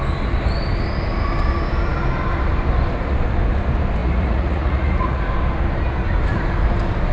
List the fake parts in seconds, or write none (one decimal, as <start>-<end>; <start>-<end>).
4.0-5.2